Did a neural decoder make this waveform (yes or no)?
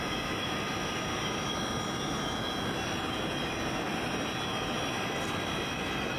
no